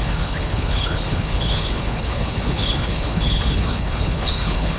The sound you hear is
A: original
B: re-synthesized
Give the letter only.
B